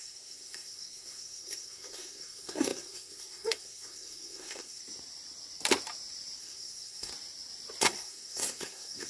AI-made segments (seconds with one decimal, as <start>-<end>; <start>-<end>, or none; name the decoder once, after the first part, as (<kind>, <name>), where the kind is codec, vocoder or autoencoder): 0.0-4.8 (codec, SNAC); 6.4-7.1; 7.8-9.1